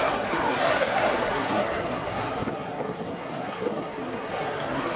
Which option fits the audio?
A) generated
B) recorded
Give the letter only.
A